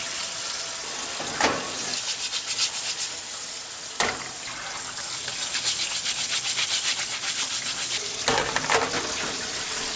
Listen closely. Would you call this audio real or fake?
real